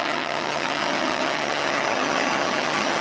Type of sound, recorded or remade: remade